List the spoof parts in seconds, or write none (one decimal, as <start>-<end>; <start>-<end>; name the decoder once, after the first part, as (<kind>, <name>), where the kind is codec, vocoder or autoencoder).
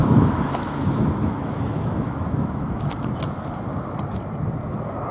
0.0-3.1 (autoencoder, DAC-VAE)